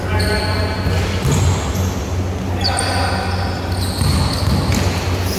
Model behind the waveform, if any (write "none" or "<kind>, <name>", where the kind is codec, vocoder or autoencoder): none